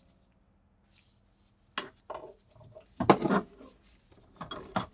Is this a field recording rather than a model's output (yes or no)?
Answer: yes